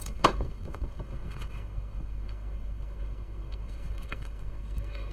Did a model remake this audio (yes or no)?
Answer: yes